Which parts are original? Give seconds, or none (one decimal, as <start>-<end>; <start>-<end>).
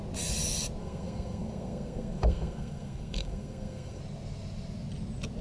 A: 0.0-0.8; 4.0-5.4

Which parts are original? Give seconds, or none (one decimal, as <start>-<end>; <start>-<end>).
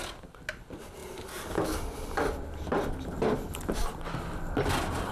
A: 0.0-5.1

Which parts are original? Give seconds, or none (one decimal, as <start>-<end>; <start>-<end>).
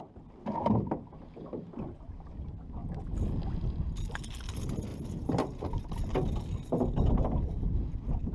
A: 0.0-8.3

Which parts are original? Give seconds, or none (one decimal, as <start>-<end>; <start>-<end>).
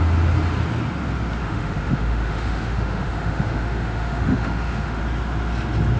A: 0.0-1.4; 5.0-6.0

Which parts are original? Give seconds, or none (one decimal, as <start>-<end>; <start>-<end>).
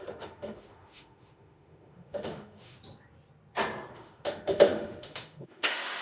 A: 2.8-3.9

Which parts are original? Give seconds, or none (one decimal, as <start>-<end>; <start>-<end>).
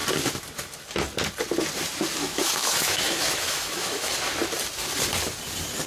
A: 0.0-2.2; 4.1-5.9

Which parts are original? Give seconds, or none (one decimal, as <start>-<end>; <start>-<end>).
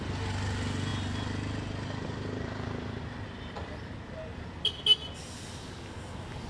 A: 0.0-6.5